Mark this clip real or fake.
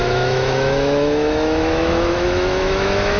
fake